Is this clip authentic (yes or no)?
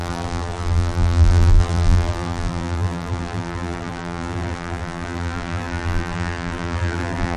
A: no